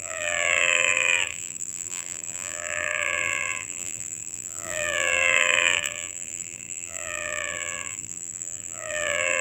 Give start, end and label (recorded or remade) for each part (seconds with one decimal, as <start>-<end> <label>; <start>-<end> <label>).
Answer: 0.0-9.4 remade